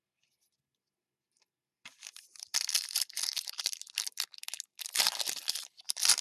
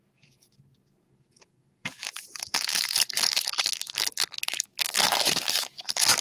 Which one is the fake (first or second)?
second